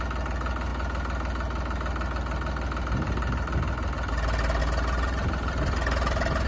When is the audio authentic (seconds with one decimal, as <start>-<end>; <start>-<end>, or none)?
0.0-6.5